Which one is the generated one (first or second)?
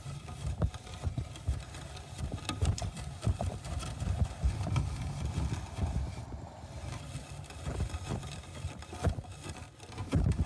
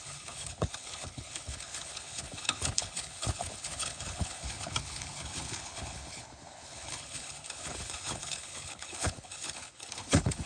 second